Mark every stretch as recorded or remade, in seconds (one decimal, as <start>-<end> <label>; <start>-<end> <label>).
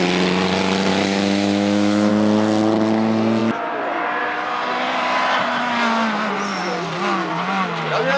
0.0-0.9 recorded; 0.9-2.1 remade; 2.1-8.2 recorded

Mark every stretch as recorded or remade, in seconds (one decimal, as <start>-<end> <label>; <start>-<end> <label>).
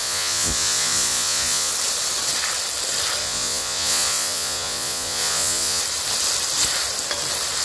0.0-1.7 remade; 1.7-3.2 recorded; 3.2-5.8 remade; 5.8-7.6 recorded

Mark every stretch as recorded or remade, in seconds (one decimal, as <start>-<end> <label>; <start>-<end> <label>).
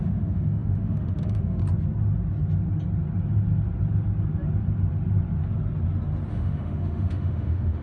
0.0-1.6 remade; 1.6-6.3 recorded; 6.3-7.8 remade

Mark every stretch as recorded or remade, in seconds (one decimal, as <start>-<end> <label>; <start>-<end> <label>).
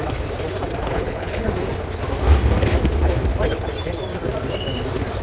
0.0-0.8 recorded; 0.8-1.5 remade; 1.5-5.2 recorded